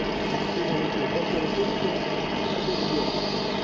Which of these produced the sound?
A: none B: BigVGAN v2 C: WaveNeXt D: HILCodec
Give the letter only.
A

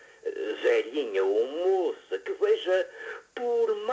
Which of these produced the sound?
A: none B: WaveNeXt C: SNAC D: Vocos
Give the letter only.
A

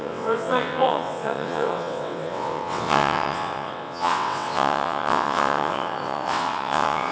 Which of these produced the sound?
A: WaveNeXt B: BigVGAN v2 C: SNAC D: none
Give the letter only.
A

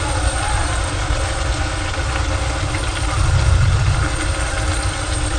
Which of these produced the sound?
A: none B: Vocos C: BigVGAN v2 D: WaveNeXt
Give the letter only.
A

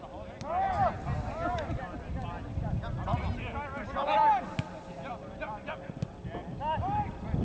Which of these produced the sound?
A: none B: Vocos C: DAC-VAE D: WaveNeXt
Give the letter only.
A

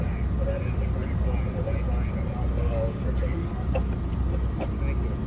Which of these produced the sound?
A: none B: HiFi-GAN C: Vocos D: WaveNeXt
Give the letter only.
A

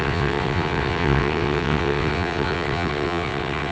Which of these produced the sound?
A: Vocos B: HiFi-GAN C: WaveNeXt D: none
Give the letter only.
C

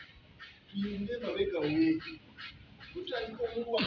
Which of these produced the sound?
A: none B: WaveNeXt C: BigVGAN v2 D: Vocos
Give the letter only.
A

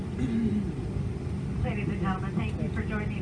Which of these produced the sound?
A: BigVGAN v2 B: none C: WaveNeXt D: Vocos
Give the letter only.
B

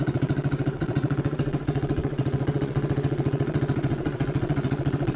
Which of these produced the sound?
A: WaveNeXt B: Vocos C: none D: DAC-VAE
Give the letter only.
A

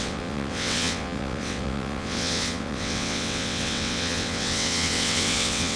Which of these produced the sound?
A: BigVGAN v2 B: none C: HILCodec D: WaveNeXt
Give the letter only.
D